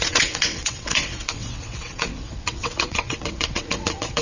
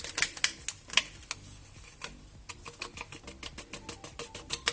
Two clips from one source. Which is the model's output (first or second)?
first